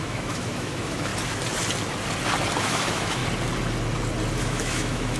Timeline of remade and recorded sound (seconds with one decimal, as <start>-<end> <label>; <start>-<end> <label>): 0.0-1.1 remade; 1.1-2.6 recorded; 2.6-3.2 remade; 3.2-4.4 recorded; 4.4-5.2 remade